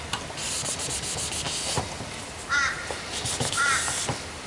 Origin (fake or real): real